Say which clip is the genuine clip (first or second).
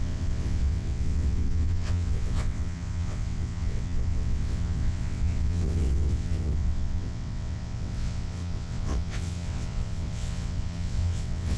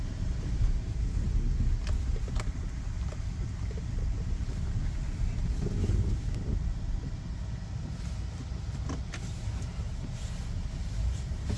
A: second